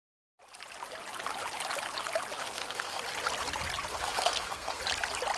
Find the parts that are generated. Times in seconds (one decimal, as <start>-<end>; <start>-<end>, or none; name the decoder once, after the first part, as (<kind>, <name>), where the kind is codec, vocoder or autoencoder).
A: 2.4-3.0 (codec, SNAC); 3.9-4.8

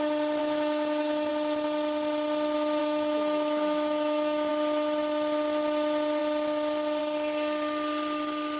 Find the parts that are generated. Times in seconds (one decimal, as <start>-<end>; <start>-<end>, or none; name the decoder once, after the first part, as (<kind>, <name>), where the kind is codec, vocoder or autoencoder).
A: 0.4-1.3 (autoencoder, DAC-VAE); 2.8-4.5

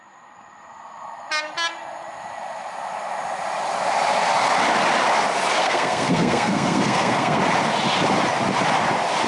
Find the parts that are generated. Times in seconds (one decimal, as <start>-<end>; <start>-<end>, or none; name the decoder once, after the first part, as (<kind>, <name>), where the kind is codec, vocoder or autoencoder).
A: 5.6-7.4 (codec, SNAC)

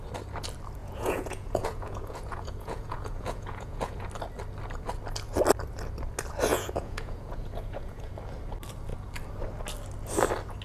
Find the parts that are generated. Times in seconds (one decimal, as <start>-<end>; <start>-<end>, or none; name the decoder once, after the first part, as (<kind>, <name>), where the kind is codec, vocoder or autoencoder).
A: 0.8-4.1 (vocoder, Vocos); 6.5-8.1

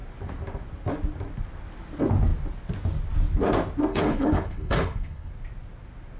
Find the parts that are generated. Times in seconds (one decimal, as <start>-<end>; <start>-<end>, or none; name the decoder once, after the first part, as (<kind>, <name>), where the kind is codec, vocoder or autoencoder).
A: 3.9-5.3 (codec, HILCodec)

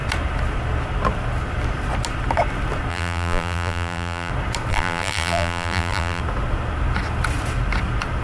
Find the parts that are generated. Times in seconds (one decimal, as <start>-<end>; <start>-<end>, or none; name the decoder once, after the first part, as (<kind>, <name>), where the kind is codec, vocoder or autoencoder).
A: 2.9-4.3 (vocoder, BigVGAN v2); 4.7-6.2

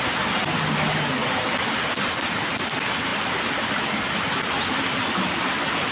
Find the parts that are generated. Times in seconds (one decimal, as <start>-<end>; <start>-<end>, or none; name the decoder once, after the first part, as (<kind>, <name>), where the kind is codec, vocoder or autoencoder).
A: none